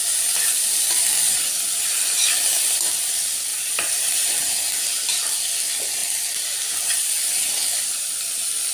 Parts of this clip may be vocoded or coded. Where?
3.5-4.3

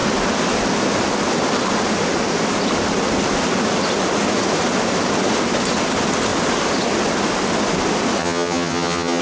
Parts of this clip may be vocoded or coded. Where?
8.2-9.2

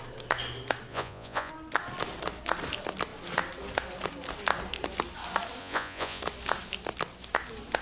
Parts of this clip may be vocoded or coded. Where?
0.9-1.5; 5.6-6.2